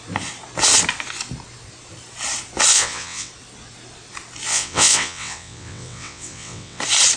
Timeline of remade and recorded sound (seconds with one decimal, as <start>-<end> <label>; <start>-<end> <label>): 0.0-2.7 recorded; 2.7-3.3 remade; 3.3-4.5 recorded; 4.5-6.8 remade; 6.8-7.2 recorded